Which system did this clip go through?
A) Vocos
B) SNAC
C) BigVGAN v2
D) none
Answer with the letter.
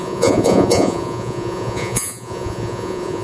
A